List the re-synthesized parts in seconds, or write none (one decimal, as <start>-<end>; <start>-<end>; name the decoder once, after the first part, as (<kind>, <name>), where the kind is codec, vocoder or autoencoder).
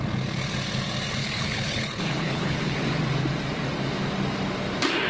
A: 1.2-2.8 (codec, HILCodec)